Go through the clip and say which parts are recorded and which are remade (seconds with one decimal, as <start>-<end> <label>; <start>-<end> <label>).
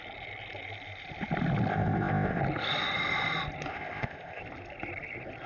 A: 0.0-1.7 recorded; 1.7-2.4 remade; 2.4-3.7 recorded; 3.7-4.4 remade; 4.4-5.5 recorded